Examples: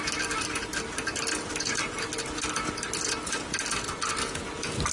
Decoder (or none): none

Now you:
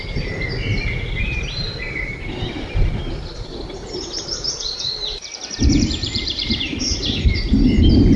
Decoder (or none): vocoder, BigVGAN v2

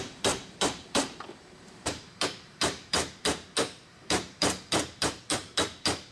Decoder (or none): vocoder, BigVGAN v2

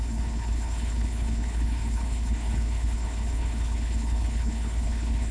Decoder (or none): codec, HILCodec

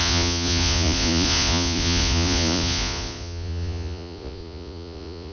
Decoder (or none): vocoder, Vocos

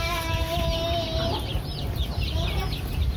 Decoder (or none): none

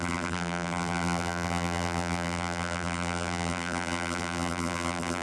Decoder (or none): vocoder, BigVGAN v2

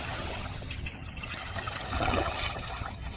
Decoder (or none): vocoder, HiFi-GAN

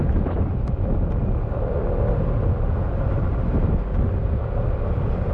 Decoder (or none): none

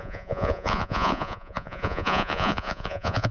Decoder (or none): vocoder, Vocos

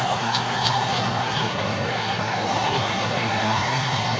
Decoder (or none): codec, SNAC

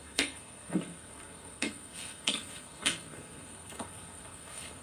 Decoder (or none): codec, SNAC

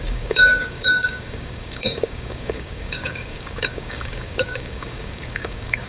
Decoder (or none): codec, DAC